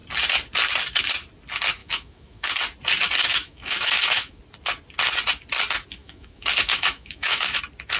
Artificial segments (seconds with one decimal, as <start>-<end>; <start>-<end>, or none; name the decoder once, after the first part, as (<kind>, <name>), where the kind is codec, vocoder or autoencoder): 1.8-2.5 (autoencoder, DAC-VAE); 3.2-4.4; 6.0-7.6